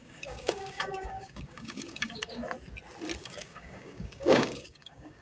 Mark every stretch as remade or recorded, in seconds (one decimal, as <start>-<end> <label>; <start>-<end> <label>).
0.0-2.4 remade; 2.4-3.2 recorded; 3.2-5.2 remade